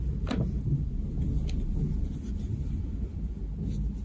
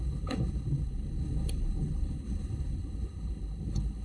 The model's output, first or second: second